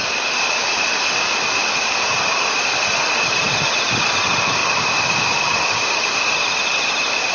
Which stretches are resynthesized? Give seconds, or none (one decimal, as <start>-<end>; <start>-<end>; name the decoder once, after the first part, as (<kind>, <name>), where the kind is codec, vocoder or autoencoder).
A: 0.0-0.9 (vocoder, BigVGAN v2)